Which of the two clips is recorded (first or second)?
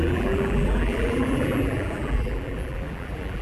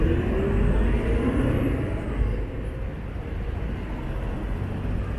second